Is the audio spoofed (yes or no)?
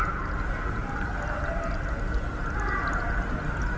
no